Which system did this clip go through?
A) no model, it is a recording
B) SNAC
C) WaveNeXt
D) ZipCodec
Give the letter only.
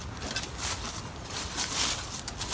A